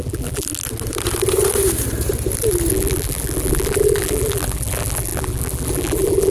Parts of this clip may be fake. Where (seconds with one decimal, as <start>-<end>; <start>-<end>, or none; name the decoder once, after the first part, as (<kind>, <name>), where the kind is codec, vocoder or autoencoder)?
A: 0.0-0.5 (vocoder, BigVGAN v2); 2.7-6.3